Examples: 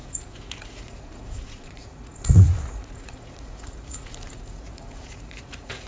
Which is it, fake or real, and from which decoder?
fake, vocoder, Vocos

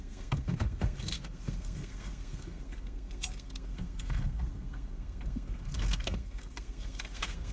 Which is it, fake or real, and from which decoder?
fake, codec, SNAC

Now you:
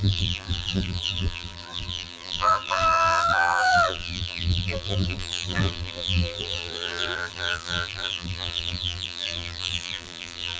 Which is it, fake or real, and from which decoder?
fake, vocoder, BigVGAN v2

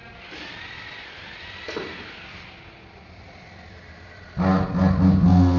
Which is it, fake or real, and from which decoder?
real